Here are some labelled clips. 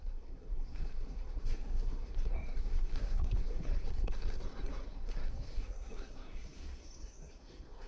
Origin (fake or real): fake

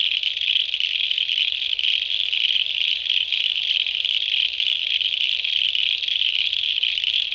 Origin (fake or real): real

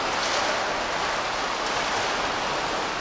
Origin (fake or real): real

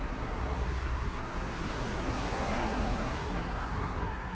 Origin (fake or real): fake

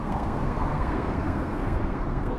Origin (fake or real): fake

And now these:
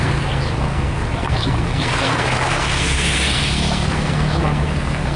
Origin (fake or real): fake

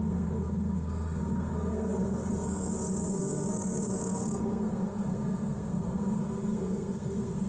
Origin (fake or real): fake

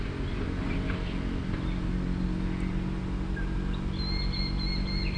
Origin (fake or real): real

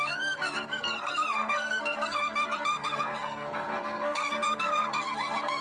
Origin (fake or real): fake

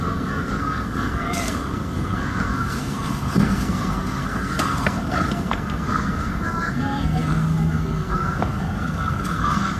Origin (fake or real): fake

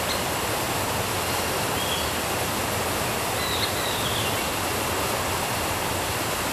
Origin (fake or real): real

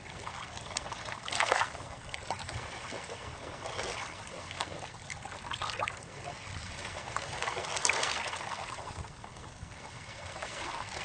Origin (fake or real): fake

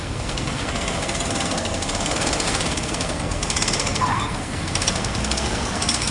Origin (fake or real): fake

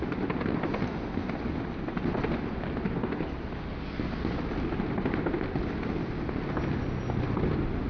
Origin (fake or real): real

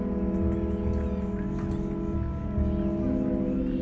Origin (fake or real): real